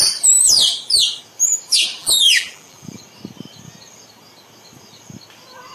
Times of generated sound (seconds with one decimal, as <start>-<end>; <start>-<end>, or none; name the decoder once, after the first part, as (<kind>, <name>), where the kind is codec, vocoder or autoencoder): 2.0-3.0 (vocoder, BigVGAN v2)